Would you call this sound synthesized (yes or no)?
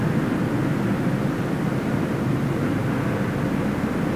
no